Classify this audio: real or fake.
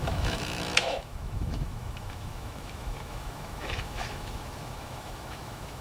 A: fake